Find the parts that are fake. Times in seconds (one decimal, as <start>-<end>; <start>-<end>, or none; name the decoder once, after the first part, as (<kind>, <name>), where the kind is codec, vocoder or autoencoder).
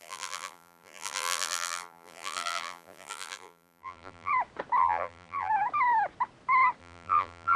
0.0-4.3 (vocoder, BigVGAN v2); 4.8-5.5; 6.8-7.6